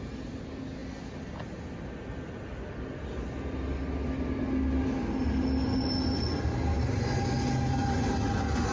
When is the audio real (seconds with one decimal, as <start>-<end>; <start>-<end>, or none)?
0.0-6.7; 7.2-8.7